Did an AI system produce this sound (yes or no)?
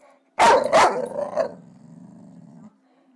yes